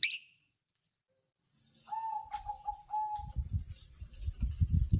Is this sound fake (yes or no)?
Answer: no